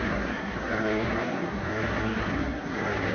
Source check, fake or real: fake